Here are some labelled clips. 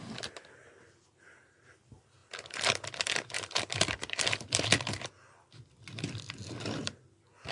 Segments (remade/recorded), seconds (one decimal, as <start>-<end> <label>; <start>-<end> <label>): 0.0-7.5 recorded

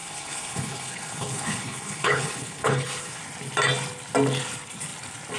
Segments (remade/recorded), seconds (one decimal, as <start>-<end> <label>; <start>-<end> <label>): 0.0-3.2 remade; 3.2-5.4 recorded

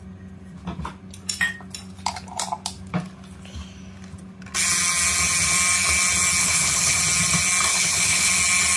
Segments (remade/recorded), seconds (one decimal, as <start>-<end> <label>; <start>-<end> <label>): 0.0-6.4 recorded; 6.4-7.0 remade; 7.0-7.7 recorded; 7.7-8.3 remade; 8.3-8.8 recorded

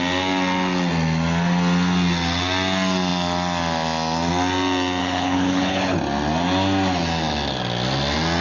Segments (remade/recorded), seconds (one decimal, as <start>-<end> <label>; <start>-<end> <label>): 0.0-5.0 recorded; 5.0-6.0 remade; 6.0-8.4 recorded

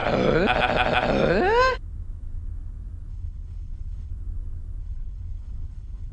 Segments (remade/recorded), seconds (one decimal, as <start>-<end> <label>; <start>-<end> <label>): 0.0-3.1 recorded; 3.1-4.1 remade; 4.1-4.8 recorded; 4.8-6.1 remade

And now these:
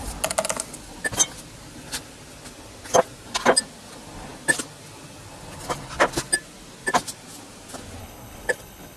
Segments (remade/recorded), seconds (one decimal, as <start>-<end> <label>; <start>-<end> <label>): 0.0-8.0 recorded; 8.0-9.0 remade

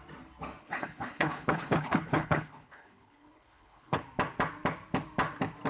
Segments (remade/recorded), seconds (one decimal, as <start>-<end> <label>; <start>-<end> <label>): 0.0-0.6 recorded; 0.6-4.0 remade; 4.0-5.7 recorded

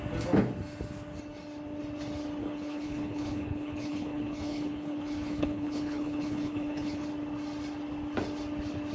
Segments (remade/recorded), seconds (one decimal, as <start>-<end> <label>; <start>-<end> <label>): 0.0-2.4 recorded; 2.4-7.1 remade; 7.1-8.9 recorded